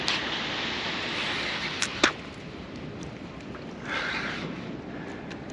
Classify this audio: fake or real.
real